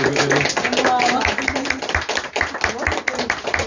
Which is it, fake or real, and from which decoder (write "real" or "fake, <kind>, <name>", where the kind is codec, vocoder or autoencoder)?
real